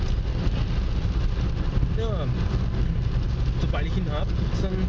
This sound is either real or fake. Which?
real